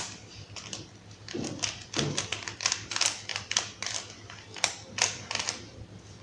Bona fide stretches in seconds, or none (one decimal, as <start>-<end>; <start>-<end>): 0.0-6.2